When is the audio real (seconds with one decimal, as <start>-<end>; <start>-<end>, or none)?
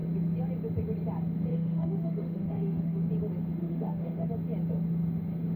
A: 0.0-1.5; 3.1-3.6; 4.3-5.6